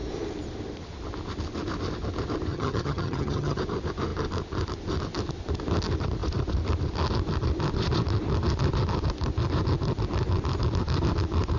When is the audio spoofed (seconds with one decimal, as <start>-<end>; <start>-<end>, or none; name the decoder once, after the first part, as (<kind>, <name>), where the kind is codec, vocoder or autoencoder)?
2.5-3.6 (vocoder, HiFi-GAN)